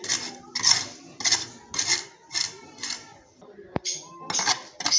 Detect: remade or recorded recorded